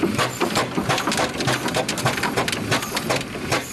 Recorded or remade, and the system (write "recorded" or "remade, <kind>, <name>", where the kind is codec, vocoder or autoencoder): remade, vocoder, BigVGAN v2